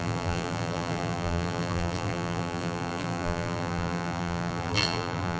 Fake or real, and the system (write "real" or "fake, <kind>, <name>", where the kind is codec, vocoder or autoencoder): fake, vocoder, BigVGAN v2